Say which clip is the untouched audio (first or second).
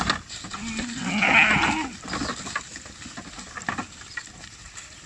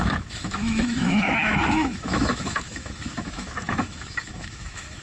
first